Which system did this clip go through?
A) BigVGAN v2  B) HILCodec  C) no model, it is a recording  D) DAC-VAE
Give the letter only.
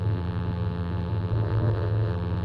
A